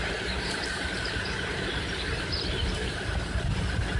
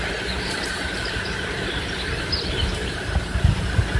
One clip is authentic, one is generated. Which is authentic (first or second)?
second